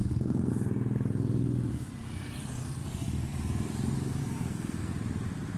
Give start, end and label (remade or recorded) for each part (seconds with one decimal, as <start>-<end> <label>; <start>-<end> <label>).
0.0-0.5 remade; 0.5-4.2 recorded; 4.2-4.9 remade; 4.9-5.6 recorded